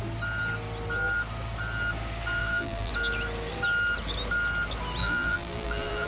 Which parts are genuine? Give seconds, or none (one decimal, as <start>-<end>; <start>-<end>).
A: 0.0-2.4; 2.9-5.0